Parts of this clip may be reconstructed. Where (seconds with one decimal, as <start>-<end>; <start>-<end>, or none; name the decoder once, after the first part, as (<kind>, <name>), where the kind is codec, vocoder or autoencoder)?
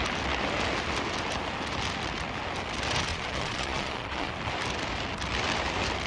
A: 3.1-4.3 (vocoder, Vocos)